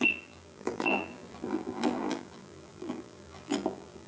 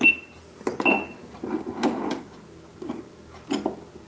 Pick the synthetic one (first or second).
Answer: first